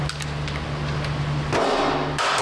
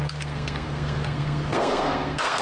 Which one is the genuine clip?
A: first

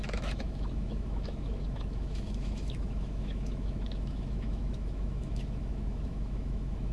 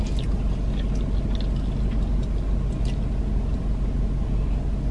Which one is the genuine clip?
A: second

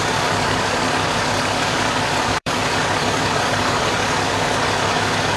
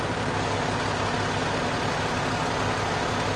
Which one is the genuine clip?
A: second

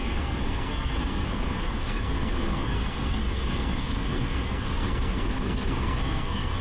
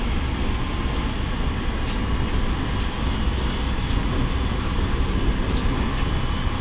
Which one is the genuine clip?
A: second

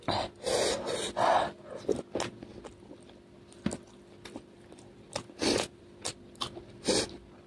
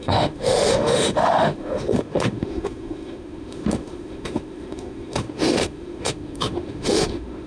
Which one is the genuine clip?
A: first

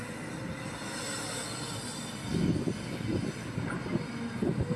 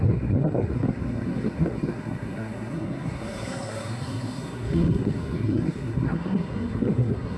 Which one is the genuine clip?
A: first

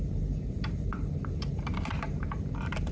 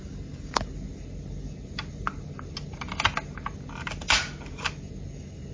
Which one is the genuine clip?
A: second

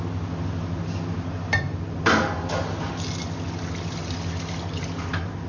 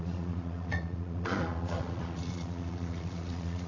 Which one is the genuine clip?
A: first